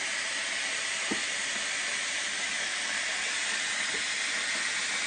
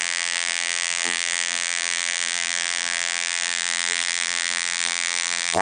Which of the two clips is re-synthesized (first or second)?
second